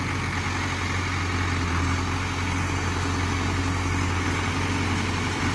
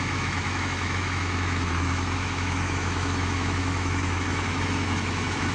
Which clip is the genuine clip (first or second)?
first